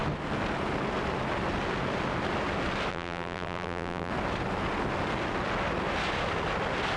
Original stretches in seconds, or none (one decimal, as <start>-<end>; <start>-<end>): 0.0-2.9; 4.1-7.0

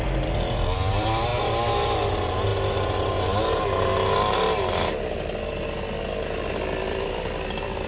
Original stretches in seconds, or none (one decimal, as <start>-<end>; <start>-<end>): 1.3-2.1; 2.5-7.1